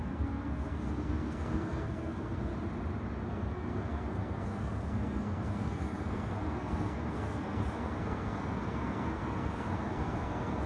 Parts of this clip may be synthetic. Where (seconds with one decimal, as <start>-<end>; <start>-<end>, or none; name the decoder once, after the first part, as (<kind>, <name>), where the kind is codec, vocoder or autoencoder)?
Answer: 0.0-2.5 (codec, SNAC); 3.3-10.7